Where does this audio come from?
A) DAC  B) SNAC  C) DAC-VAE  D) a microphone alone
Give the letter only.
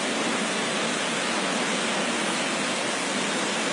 D